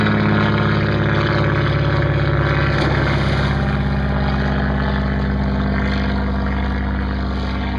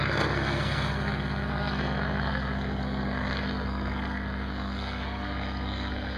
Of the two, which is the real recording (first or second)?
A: first